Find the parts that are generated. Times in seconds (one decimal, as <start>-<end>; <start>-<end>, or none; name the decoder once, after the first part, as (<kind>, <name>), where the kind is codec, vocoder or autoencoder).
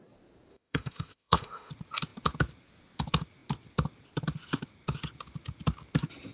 0.5-1.7 (autoencoder, DAC-VAE)